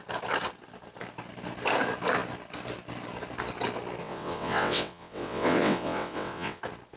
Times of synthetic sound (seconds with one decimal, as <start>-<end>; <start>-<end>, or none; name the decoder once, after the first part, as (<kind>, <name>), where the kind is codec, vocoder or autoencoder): 4.0-6.6 (vocoder, WaveNeXt)